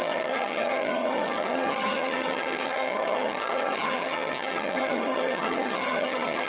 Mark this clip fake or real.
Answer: fake